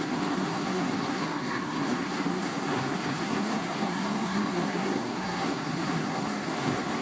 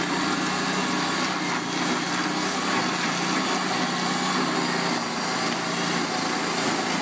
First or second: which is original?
second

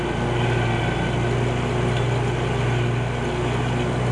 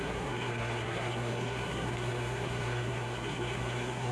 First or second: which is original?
first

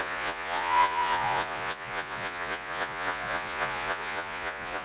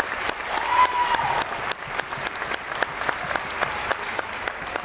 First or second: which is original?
second